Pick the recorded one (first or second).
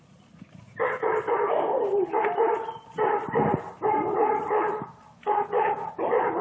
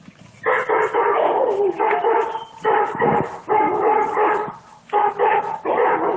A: second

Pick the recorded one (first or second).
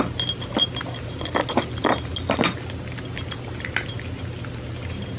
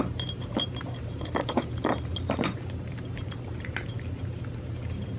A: first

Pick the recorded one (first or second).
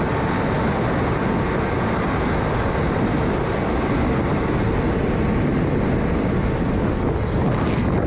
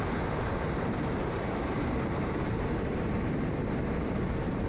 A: first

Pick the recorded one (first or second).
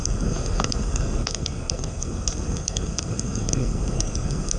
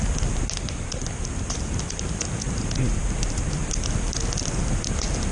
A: second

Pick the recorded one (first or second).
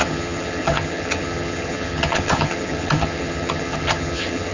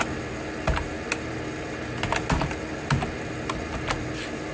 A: second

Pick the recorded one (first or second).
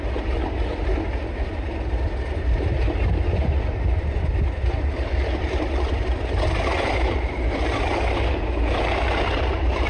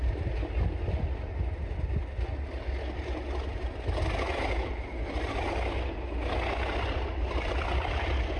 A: second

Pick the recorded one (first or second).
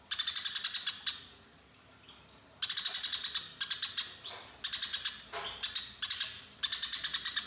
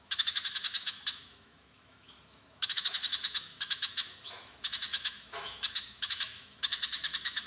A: first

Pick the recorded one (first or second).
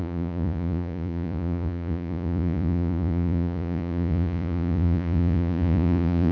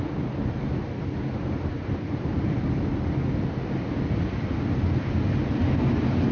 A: second